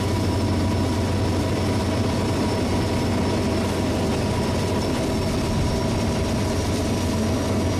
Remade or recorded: recorded